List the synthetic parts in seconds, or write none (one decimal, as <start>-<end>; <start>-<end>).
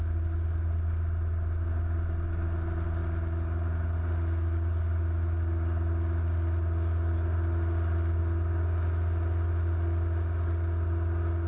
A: none